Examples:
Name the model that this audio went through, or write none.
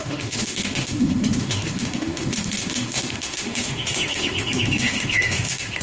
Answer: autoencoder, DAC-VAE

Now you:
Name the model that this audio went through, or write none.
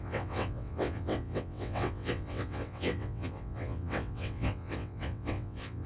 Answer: vocoder, WaveNeXt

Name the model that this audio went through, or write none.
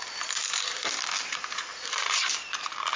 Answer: vocoder, BigVGAN v2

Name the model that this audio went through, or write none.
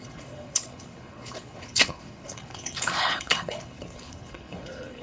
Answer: codec, HILCodec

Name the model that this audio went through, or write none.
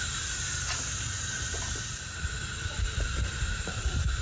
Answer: vocoder, BigVGAN v2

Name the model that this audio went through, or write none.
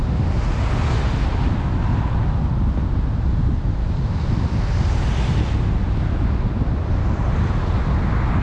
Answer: none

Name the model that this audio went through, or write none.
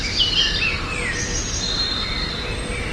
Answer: none